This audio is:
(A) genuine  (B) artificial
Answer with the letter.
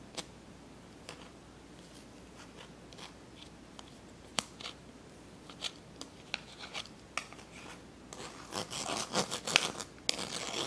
A